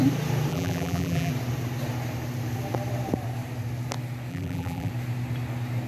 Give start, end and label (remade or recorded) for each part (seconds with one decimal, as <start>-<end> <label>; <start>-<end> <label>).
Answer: 0.0-0.5 recorded; 0.5-1.3 remade; 1.3-4.3 recorded; 4.3-4.9 remade; 4.9-5.9 recorded